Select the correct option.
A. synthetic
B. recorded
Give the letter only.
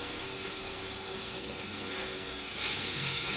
A